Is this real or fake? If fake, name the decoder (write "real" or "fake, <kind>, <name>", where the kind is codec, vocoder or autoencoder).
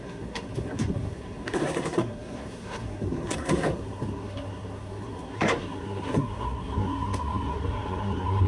fake, codec, SNAC